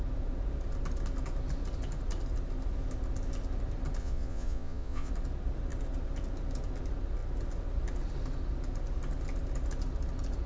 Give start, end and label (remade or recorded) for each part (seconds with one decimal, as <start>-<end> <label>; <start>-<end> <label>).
0.0-4.0 recorded; 4.0-5.1 remade; 5.1-10.5 recorded